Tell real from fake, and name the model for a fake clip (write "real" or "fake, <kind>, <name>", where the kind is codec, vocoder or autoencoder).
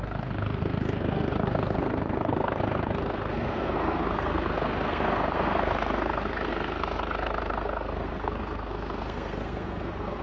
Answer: fake, codec, SNAC